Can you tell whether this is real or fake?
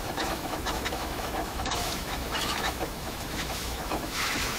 fake